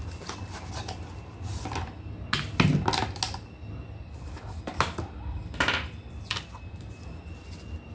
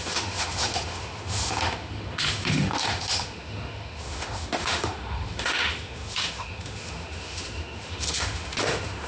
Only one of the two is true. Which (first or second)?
first